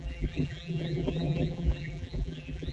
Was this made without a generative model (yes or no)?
no